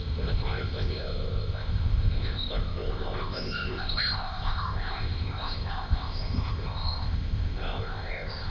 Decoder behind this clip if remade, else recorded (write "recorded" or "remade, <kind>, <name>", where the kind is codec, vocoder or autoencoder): remade, codec, ZipCodec